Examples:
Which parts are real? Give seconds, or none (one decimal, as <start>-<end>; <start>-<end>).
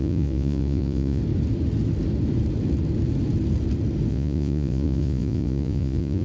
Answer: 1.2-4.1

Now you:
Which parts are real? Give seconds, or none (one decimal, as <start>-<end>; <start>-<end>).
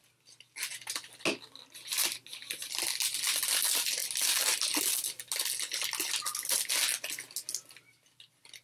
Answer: 0.0-8.6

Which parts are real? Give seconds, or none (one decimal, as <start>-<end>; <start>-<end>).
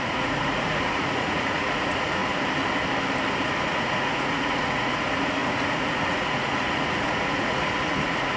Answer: 2.2-3.7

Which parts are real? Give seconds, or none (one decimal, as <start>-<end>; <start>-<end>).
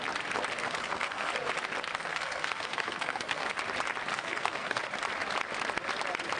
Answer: 0.0-0.6; 1.3-2.0; 3.5-4.1; 4.8-6.4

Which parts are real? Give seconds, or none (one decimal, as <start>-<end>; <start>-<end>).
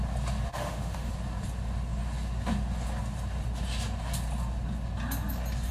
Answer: 0.0-0.5; 1.1-5.7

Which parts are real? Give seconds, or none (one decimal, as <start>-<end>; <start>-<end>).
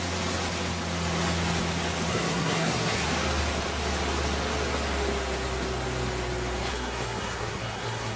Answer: 0.0-2.1; 3.1-6.7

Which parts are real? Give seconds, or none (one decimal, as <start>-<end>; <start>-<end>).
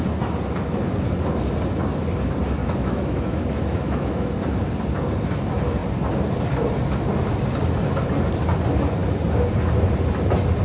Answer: 0.0-2.6; 4.3-10.6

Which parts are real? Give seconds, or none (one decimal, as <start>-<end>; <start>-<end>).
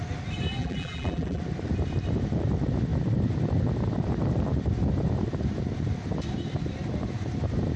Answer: 0.0-0.6; 1.4-7.8